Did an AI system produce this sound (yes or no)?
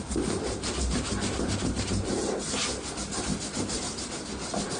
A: no